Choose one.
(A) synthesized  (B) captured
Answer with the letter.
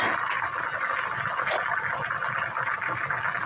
B